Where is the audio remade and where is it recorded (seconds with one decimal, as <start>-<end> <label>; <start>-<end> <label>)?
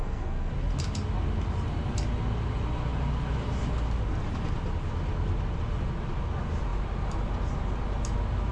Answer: 0.0-0.5 remade; 0.5-8.5 recorded